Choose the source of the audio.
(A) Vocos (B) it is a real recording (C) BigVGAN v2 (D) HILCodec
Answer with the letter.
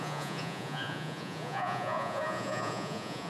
A